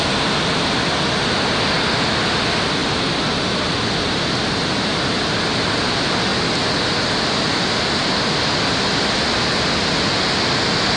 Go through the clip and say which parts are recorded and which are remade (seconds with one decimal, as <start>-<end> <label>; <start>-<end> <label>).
0.0-11.0 recorded